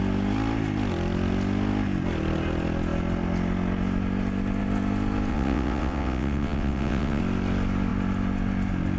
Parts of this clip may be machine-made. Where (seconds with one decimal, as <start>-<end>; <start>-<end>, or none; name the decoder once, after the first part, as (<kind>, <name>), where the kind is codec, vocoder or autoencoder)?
5.3-7.2 (vocoder, WaveNeXt)